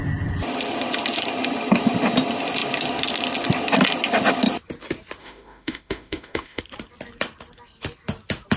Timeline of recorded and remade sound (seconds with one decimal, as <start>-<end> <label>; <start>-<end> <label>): 0.0-5.2 recorded; 5.2-6.6 remade; 6.6-8.6 recorded

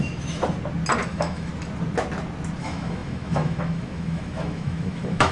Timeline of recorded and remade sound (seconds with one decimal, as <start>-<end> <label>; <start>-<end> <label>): 0.0-0.4 remade; 0.4-1.1 recorded; 1.1-1.5 remade; 1.5-2.6 recorded; 2.6-5.3 remade

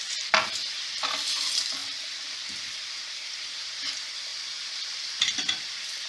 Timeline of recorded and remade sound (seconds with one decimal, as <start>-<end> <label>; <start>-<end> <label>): 0.0-6.1 remade